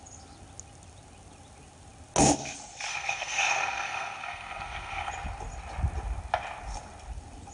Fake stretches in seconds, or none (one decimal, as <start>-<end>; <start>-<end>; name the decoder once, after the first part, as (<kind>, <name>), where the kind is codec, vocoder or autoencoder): 2.9-5.1 (codec, SNAC)